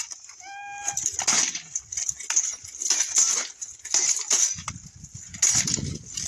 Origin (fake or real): real